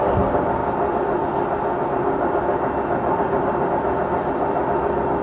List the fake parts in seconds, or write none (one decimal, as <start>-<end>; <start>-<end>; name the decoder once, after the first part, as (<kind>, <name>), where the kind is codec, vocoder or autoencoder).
none